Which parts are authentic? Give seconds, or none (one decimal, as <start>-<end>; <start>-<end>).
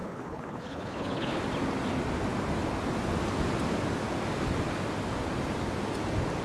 1.4-6.4